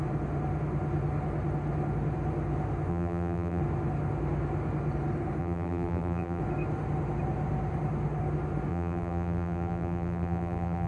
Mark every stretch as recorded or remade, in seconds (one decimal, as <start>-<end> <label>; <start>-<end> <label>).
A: 0.0-2.9 recorded; 2.9-3.6 remade; 3.6-5.4 recorded; 5.4-6.4 remade; 6.4-8.7 recorded; 8.7-10.9 remade